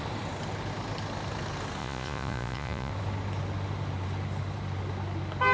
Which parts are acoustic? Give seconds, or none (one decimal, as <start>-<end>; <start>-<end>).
0.0-1.8; 2.9-5.5